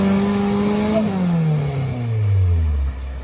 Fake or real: real